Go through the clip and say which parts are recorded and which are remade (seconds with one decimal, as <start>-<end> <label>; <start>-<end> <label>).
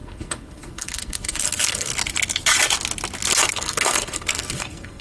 0.0-1.9 remade; 1.9-3.5 recorded; 3.5-5.0 remade